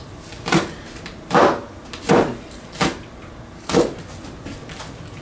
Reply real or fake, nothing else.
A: real